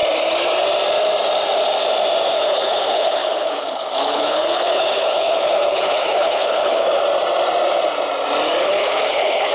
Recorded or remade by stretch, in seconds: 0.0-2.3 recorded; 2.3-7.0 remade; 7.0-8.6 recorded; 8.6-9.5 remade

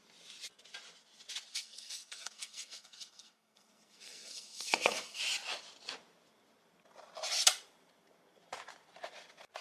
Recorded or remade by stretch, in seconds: 0.0-1.5 recorded; 1.5-5.2 remade; 5.2-9.6 recorded

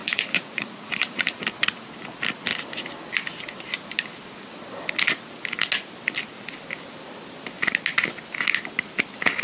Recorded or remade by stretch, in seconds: 0.0-1.4 remade; 1.4-9.4 recorded

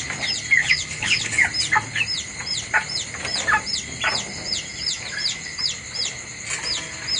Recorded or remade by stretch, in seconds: 0.0-0.6 recorded; 0.6-1.4 remade; 1.4-7.2 recorded

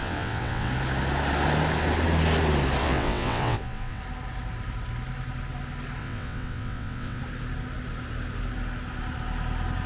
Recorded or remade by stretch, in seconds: 0.0-0.7 remade; 0.7-2.8 recorded; 2.8-4.0 remade; 4.0-6.0 recorded; 6.0-7.2 remade; 7.2-9.9 recorded